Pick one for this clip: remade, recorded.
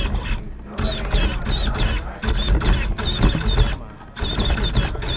recorded